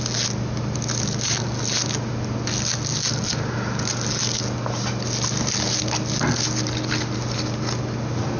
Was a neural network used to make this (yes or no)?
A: no